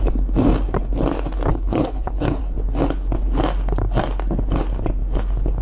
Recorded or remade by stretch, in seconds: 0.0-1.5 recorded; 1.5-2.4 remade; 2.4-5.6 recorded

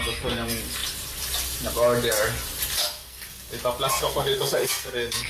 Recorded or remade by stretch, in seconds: 0.0-2.8 recorded; 2.8-3.5 remade; 3.5-3.9 recorded; 3.9-5.3 remade

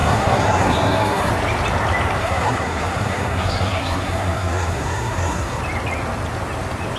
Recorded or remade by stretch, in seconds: 0.0-1.3 remade; 1.3-2.2 recorded; 2.2-5.6 remade; 5.6-7.0 recorded

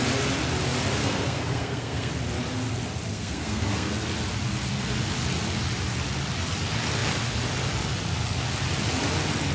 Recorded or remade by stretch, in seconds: 0.0-1.0 recorded; 1.0-2.1 remade; 2.1-3.1 recorded; 3.1-3.9 remade; 3.9-9.5 recorded